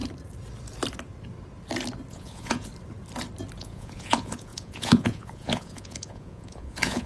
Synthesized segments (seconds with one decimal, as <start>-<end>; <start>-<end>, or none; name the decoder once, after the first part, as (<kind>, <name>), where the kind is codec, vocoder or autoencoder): 2.1-2.7 (vocoder, Vocos); 3.6-7.1